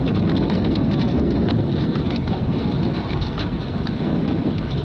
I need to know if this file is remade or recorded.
remade